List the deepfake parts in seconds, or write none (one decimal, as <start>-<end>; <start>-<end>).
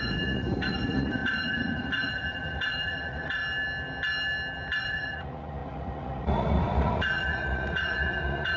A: 0.0-3.4; 4.8-8.6